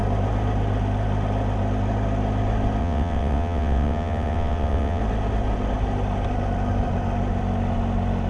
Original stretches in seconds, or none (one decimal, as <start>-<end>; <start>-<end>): 0.0-2.8; 5.0-8.3